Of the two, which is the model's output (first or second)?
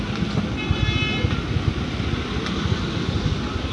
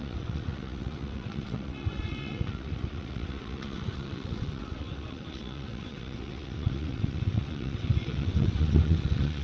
second